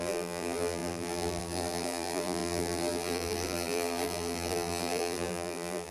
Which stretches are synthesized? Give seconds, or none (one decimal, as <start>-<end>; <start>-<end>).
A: 0.0-5.9